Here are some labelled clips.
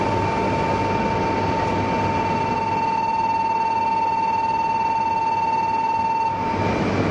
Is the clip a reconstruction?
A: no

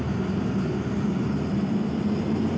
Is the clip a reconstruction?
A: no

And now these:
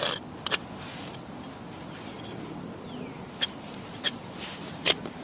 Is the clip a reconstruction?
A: no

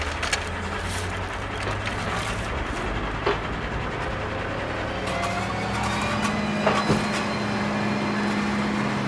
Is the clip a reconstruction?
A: no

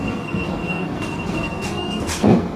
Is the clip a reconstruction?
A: yes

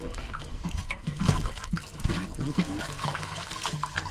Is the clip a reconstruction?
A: yes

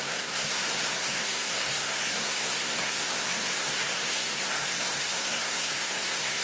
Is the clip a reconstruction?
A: yes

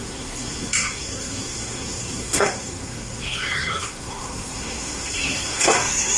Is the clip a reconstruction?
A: yes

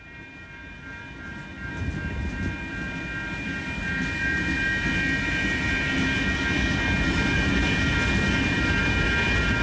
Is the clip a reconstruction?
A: no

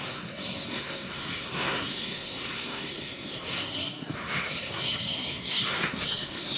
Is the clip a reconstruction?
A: yes